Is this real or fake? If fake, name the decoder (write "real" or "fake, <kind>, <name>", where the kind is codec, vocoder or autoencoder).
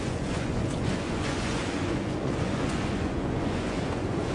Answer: fake, vocoder, Vocos